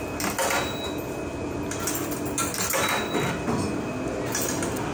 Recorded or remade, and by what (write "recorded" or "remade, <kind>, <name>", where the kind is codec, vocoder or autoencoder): recorded